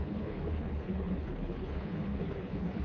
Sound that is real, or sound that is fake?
fake